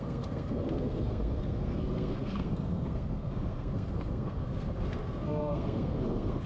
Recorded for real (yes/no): no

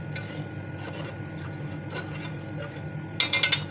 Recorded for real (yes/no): yes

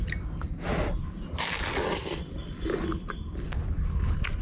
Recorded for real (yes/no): yes